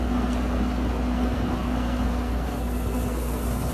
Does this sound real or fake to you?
fake